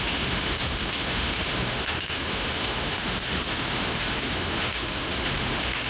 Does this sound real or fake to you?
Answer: fake